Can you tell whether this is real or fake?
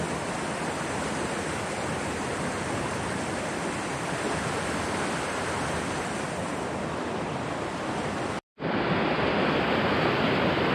fake